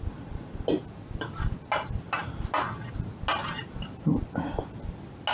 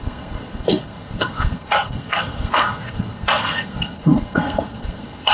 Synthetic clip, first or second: second